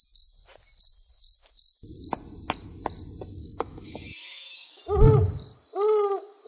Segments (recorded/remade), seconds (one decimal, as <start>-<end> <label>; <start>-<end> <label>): 0.0-3.4 recorded; 3.4-4.8 remade; 4.8-6.5 recorded